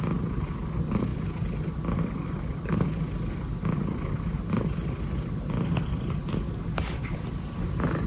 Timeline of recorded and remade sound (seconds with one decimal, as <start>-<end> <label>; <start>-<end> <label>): 0.0-8.1 recorded